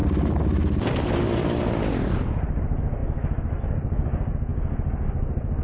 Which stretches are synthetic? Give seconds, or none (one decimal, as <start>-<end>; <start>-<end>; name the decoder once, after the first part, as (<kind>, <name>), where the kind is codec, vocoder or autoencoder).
none